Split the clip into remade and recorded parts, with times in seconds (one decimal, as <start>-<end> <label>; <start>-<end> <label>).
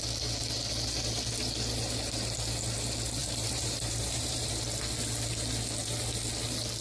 0.0-3.2 recorded; 3.2-4.5 remade; 4.5-6.8 recorded